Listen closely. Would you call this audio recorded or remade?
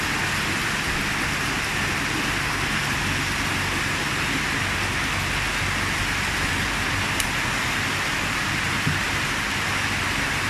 recorded